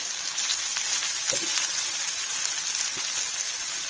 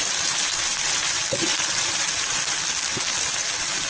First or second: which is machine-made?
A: second